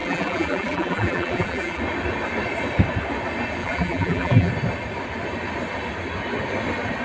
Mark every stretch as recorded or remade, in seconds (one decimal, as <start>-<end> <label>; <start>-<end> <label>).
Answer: 0.0-1.8 remade; 1.8-3.6 recorded; 3.6-4.5 remade; 4.5-7.0 recorded